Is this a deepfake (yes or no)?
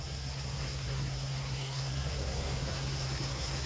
yes